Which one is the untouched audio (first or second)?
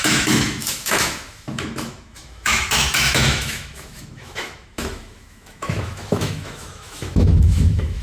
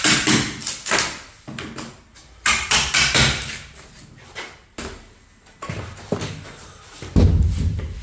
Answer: second